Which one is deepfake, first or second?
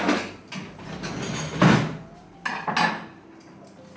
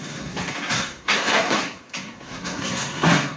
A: second